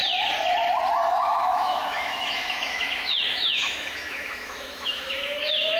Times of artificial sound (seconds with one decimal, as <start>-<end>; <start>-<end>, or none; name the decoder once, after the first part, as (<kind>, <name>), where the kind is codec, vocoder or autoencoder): 1.1-5.8 (autoencoder, DAC-VAE)